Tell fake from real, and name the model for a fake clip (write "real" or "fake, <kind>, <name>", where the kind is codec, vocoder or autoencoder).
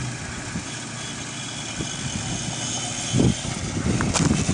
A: real